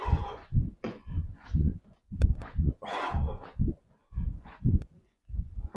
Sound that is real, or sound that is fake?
fake